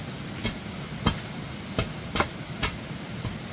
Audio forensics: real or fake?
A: real